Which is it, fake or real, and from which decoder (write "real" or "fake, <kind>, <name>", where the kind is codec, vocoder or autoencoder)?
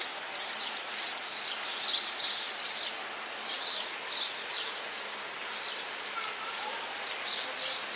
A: real